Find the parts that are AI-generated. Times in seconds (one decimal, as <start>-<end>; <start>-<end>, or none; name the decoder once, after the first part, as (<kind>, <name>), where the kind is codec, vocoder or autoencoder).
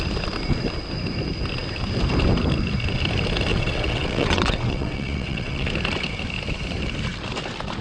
3.5-5.7 (vocoder, WaveNeXt)